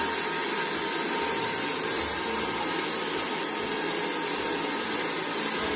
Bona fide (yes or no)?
yes